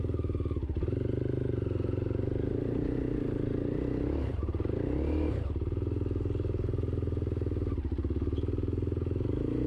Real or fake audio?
real